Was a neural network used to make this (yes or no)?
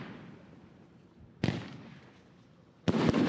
no